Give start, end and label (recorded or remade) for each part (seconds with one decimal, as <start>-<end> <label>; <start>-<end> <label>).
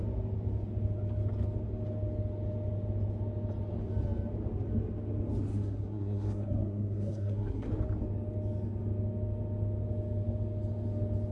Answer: 0.0-5.5 recorded; 5.5-7.7 remade; 7.7-11.3 recorded